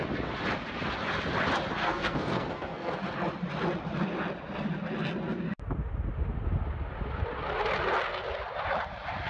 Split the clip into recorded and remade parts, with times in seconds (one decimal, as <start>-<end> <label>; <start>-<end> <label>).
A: 0.0-1.8 recorded; 1.8-2.9 remade; 2.9-9.3 recorded